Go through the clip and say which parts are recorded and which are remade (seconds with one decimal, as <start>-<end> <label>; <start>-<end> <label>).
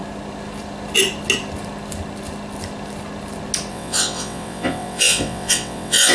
0.0-3.7 recorded; 3.7-6.1 remade